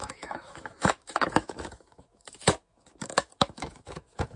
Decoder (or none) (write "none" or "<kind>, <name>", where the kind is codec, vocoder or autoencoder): autoencoder, DAC-VAE